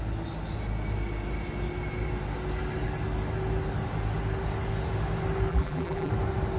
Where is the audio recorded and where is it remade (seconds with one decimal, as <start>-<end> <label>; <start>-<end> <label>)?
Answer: 0.0-5.5 recorded; 5.5-6.1 remade; 6.1-6.6 recorded